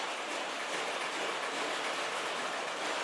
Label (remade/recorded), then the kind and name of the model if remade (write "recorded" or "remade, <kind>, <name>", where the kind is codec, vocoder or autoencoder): recorded